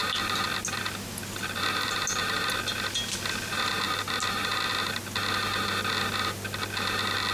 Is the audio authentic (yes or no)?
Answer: yes